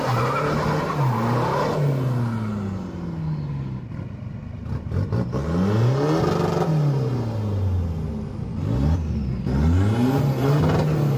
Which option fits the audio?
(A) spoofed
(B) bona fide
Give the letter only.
B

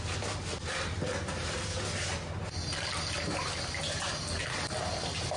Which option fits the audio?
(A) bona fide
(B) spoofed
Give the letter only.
A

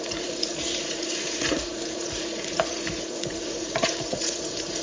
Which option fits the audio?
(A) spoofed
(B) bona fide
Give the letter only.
A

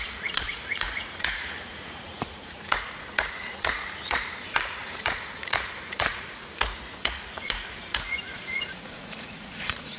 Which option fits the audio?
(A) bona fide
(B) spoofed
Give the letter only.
B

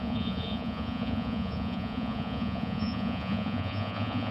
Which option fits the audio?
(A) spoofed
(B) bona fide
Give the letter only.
A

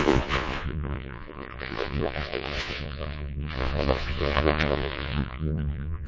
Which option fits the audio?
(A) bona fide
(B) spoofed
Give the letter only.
B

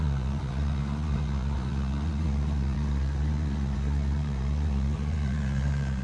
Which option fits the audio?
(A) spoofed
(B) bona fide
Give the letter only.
A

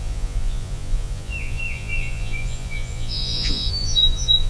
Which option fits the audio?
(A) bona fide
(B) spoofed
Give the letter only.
B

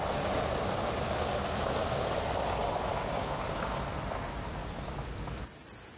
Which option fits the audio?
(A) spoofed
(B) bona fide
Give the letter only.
B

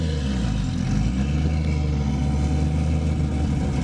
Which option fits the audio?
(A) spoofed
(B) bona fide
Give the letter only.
B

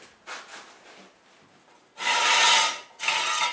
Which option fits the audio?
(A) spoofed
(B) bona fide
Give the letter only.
B